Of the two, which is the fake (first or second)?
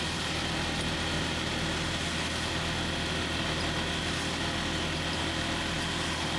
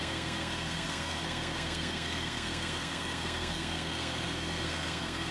second